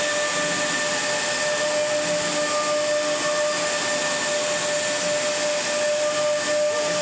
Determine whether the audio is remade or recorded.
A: recorded